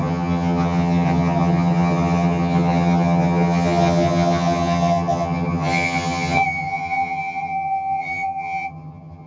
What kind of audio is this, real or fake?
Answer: fake